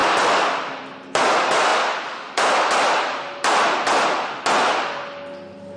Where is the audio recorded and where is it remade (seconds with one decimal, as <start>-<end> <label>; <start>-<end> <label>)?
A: 0.0-5.8 recorded